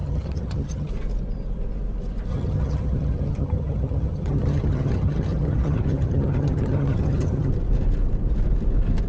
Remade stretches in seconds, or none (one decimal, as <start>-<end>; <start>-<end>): 0.0-0.9; 2.3-7.5